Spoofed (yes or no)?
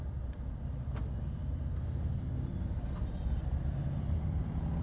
no